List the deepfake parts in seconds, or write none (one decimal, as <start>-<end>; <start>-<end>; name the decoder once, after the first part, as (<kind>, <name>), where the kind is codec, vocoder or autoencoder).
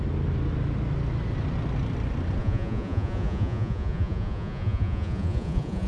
2.4-5.9 (vocoder, Vocos)